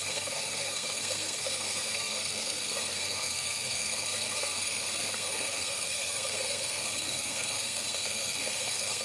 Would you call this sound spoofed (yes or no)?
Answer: yes